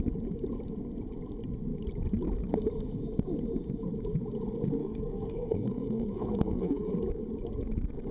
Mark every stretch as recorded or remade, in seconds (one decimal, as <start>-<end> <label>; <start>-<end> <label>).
0.0-4.8 recorded; 4.8-6.9 remade; 6.9-8.1 recorded